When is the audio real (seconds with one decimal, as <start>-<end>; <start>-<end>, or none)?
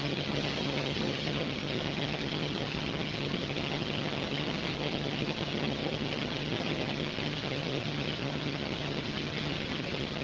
none